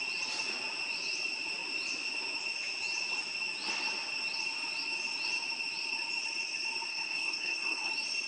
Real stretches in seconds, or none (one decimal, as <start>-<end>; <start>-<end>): 0.0-6.9; 7.9-8.3